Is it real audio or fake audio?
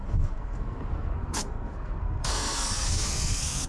fake